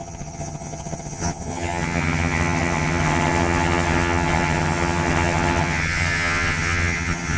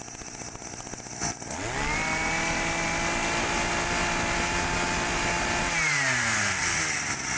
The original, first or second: second